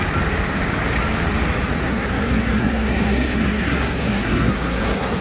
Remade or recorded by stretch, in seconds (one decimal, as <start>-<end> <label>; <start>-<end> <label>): 0.0-1.8 recorded; 1.8-5.2 remade